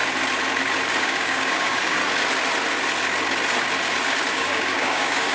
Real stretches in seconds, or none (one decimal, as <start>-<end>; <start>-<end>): 0.0-1.0; 2.0-4.3